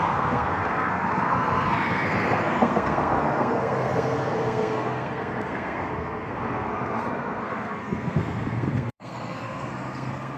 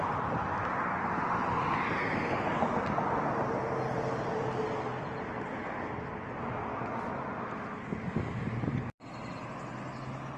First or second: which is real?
second